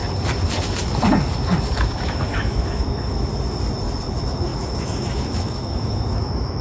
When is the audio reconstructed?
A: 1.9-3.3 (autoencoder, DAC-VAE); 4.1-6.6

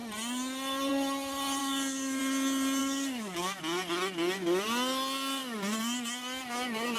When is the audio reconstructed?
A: 1.6-2.2 (codec, DAC); 2.8-3.6